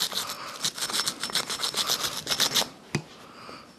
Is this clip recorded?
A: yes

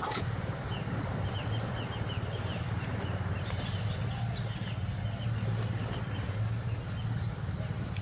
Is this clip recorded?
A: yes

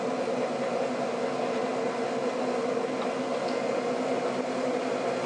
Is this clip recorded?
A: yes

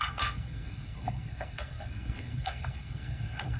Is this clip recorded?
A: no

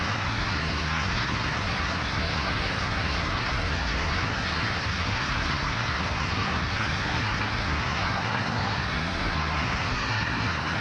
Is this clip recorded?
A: no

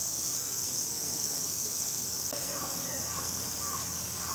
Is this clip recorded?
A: no